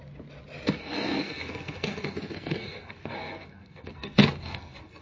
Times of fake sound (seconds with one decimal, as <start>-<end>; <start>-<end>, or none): 0.8-5.0